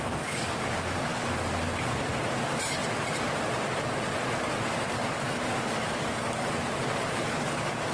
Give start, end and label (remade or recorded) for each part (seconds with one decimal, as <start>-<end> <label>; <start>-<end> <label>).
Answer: 0.0-1.1 remade; 1.1-4.9 recorded; 4.9-6.6 remade; 6.6-7.1 recorded; 7.1-7.9 remade